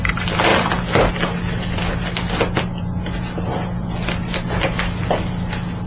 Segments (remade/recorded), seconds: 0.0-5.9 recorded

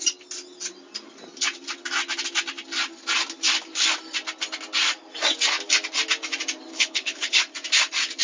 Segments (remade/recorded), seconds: 0.0-6.7 recorded; 6.7-7.4 remade; 7.4-8.2 recorded

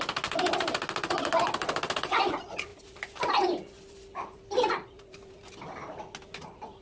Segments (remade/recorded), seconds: 0.0-6.8 recorded

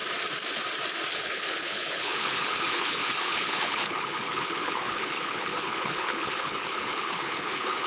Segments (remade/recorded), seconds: 0.0-1.1 recorded; 1.1-7.9 remade

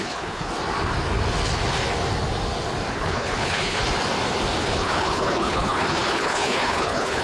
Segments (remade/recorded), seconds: 0.0-0.5 remade; 0.5-2.9 recorded; 2.9-3.8 remade; 3.8-4.6 recorded; 4.6-7.2 remade